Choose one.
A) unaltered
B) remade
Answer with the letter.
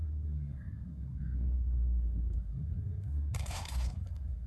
B